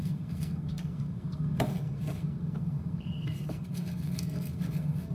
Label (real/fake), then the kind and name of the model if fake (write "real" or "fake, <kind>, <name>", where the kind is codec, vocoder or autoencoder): fake, codec, SNAC